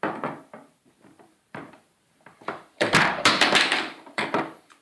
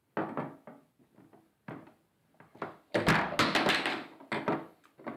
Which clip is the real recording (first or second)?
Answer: second